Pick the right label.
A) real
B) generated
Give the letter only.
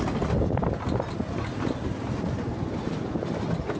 A